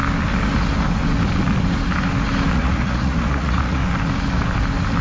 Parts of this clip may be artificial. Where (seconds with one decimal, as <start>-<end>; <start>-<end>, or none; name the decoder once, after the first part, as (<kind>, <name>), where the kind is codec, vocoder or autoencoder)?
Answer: 2.5-3.8 (vocoder, Vocos)